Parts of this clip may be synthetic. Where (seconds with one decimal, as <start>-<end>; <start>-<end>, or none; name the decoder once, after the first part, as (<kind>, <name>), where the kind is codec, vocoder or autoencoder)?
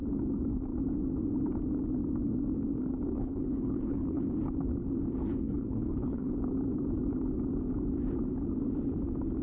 3.2-4.2 (codec, HILCodec); 5.2-6.3